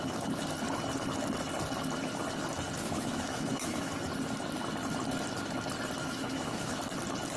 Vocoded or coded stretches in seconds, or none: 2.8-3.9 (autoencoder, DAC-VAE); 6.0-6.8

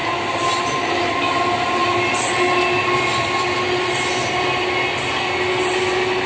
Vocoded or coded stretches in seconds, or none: none

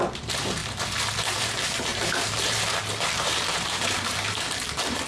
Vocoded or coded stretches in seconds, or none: 0.0-0.6 (vocoder, BigVGAN v2); 1.3-5.1

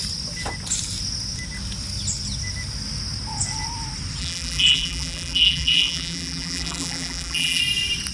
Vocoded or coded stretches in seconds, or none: 4.2-7.6 (vocoder, BigVGAN v2)

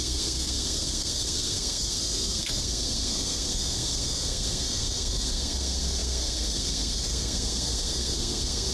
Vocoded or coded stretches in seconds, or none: 0.0-8.7 (codec, SNAC)

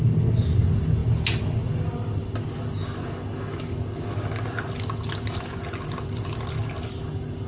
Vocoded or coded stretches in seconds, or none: none

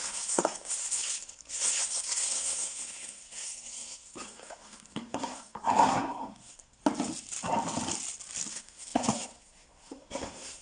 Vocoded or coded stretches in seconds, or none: 0.0-6.8 (codec, SNAC); 8.5-10.6

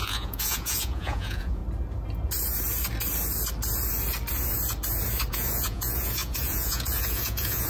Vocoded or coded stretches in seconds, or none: 0.0-1.6 (vocoder, Vocos); 5.3-7.7